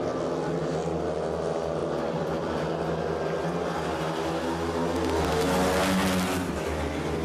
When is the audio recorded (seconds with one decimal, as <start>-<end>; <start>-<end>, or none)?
0.0-1.8; 2.7-7.2